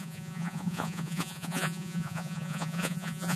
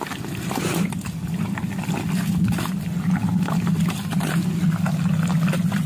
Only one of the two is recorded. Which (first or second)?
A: second